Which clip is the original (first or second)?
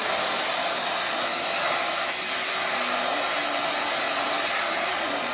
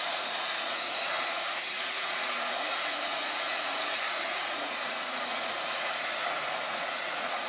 first